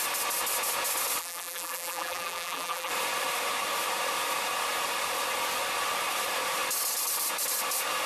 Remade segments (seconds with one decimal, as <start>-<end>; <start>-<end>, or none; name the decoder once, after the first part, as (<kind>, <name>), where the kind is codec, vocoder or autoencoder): 1.2-2.9 (vocoder, BigVGAN v2)